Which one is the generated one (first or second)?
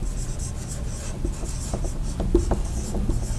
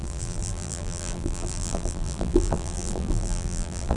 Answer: second